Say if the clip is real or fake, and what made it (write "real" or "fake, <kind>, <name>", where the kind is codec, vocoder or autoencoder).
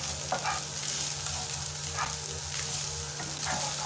real